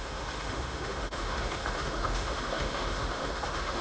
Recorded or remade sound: remade